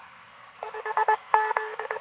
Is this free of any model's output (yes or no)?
no